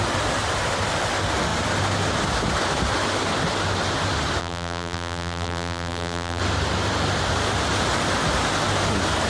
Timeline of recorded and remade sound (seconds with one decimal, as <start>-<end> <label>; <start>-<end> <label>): 0.0-4.4 recorded; 4.4-6.4 remade; 6.4-9.3 recorded